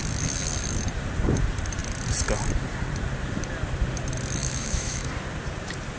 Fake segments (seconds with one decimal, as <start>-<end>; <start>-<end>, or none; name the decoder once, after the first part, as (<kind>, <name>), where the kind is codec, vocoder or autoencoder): 4.4-5.1 (autoencoder, DAC-VAE)